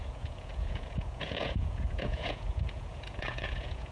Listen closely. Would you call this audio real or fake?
fake